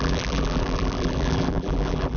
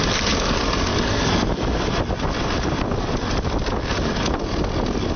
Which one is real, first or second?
second